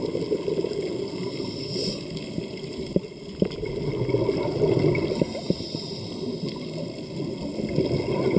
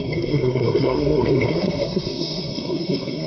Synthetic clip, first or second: second